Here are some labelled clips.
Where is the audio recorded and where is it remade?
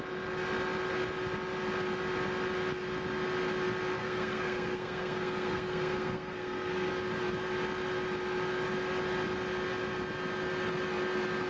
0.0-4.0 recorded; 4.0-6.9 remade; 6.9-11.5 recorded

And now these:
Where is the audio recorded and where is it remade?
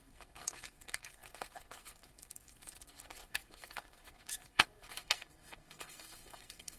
0.0-6.8 remade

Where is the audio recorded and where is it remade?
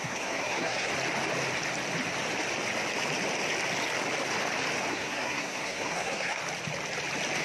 0.0-0.9 remade; 0.9-4.9 recorded; 4.9-6.4 remade; 6.4-7.4 recorded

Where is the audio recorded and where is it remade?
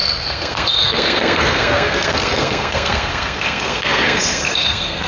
0.0-5.1 remade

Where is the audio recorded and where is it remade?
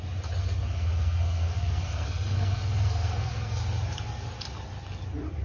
0.0-0.4 recorded; 0.4-3.6 remade; 3.6-5.4 recorded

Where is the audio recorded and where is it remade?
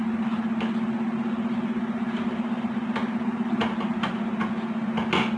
0.0-5.4 recorded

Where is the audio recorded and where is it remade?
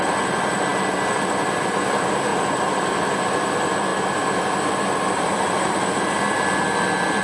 0.0-7.2 recorded